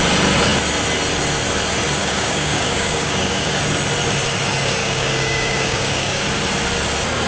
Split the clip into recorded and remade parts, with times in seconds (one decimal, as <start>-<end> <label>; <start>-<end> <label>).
0.0-2.0 recorded; 2.0-3.6 remade; 3.6-4.8 recorded; 4.8-6.2 remade; 6.2-7.3 recorded